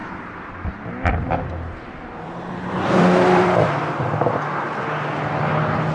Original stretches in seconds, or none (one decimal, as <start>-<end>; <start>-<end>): 0.7-1.1; 3.8-5.9